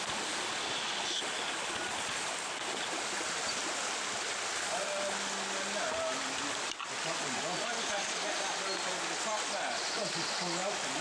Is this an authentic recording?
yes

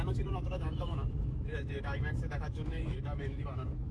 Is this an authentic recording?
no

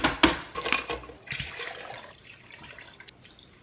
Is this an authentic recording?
yes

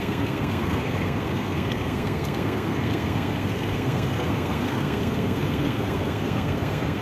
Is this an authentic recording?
no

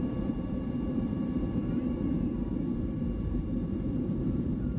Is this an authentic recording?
no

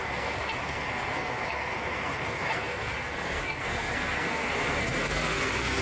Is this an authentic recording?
no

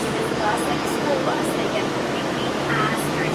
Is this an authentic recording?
no